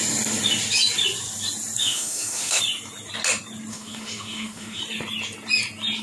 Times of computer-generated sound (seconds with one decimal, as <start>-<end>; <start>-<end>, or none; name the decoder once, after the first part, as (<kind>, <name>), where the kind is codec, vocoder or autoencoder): 1.8-2.6 (autoencoder, DAC-VAE); 3.7-4.8